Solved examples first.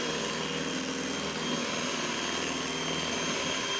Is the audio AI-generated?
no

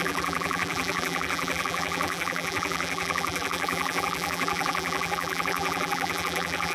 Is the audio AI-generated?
yes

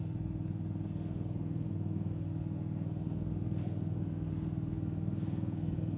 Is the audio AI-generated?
yes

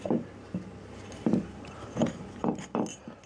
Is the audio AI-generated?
no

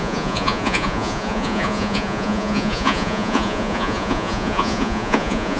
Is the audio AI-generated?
yes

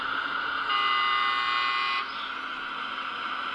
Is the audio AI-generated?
no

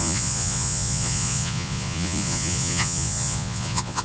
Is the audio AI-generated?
yes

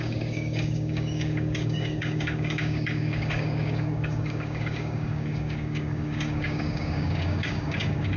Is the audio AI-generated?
yes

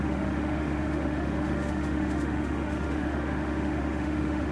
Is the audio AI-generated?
yes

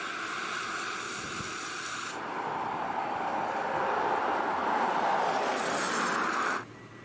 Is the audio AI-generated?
no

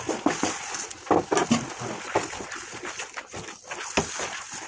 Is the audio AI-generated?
no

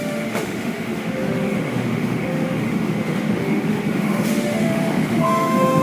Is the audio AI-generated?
yes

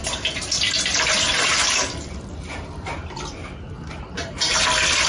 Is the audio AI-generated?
yes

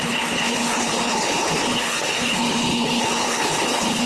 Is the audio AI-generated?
yes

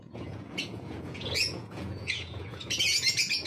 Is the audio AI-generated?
yes